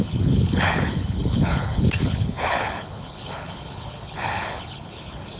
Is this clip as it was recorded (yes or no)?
no